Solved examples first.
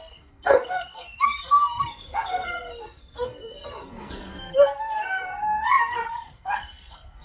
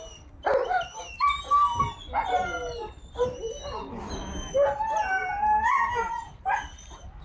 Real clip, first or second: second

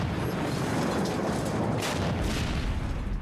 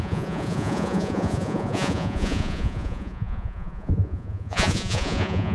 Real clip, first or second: first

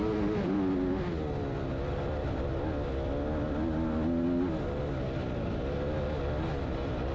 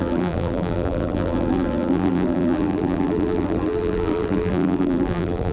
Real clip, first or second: first